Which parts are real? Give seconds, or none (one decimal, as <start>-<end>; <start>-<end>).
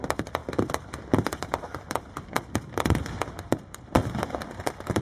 0.0-5.0